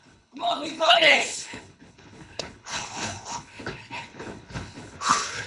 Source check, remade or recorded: remade